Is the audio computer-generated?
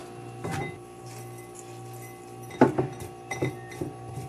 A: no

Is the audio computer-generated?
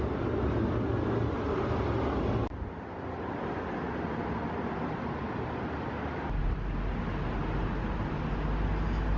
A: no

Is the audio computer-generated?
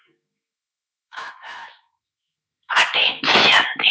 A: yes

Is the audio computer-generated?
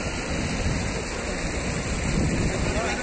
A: no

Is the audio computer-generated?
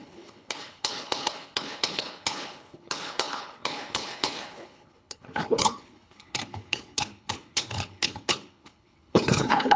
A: yes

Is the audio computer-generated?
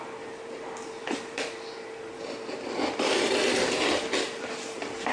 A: yes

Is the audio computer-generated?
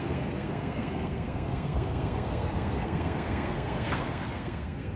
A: yes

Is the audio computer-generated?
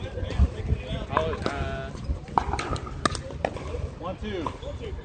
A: no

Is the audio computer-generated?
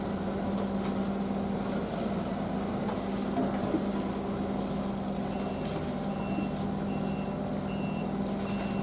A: no